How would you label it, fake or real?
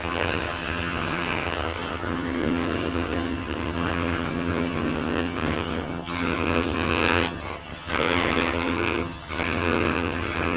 fake